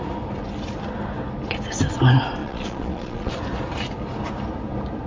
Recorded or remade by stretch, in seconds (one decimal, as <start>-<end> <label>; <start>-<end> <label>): 0.0-2.4 recorded; 2.4-3.3 remade; 3.3-5.1 recorded